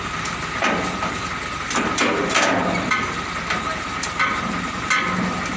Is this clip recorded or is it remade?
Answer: recorded